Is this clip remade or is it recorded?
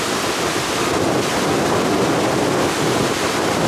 recorded